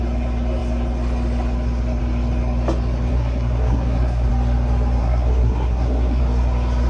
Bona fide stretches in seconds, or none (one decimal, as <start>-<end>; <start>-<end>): 0.0-3.1; 4.3-5.0; 6.2-6.9